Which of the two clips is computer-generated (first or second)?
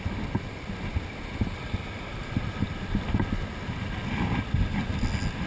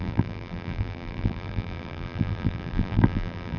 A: second